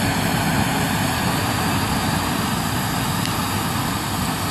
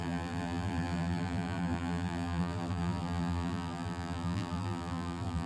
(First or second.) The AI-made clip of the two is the second